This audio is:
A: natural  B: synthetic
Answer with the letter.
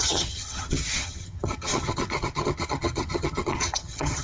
B